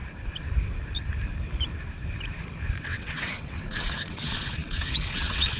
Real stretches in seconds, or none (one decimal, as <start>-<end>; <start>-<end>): 0.0-2.8